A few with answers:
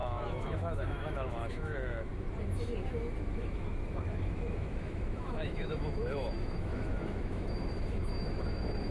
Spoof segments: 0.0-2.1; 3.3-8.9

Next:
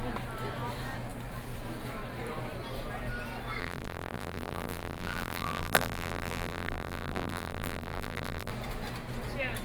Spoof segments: 3.6-8.5

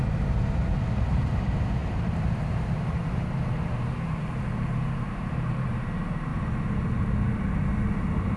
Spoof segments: 0.0-6.3; 8.0-8.4

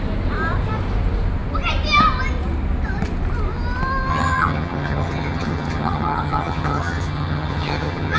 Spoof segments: 4.1-8.2